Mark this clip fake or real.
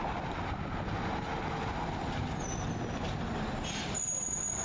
real